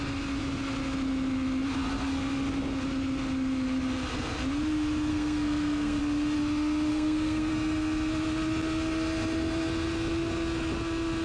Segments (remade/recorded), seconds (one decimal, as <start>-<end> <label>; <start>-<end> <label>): 0.0-5.1 recorded; 5.1-6.0 remade; 6.0-6.9 recorded; 6.9-7.5 remade; 7.5-11.2 recorded